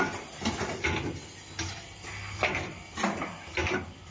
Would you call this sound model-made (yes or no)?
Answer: no